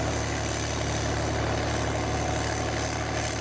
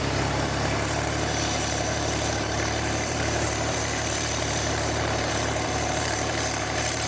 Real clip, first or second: first